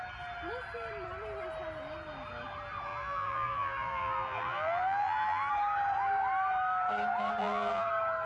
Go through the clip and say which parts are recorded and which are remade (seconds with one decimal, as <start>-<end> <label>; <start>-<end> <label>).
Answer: 0.0-2.9 recorded; 2.9-5.5 remade; 5.5-7.4 recorded; 7.4-7.9 remade; 7.9-8.3 recorded